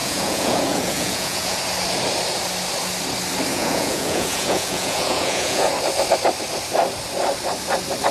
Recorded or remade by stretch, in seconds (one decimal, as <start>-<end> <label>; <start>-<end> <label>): 0.0-1.6 remade; 1.6-3.5 recorded; 3.5-5.7 remade; 5.7-8.1 recorded